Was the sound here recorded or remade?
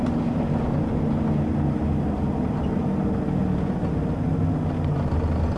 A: recorded